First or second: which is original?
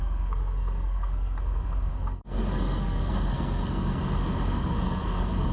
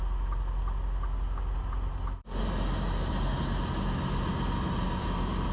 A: second